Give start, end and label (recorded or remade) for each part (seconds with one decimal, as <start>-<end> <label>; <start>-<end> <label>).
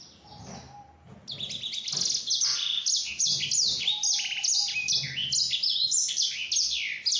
0.0-7.2 recorded